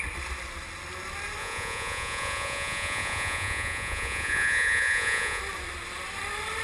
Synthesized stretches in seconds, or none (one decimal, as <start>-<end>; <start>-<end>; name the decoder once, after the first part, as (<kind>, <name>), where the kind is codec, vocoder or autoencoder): 1.4-5.4 (vocoder, Vocos)